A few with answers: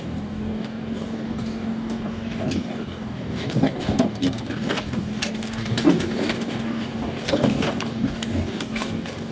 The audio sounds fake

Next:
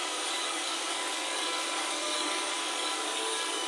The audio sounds fake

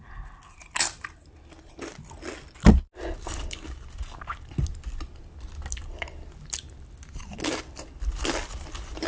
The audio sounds real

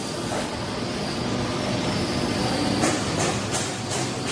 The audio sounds real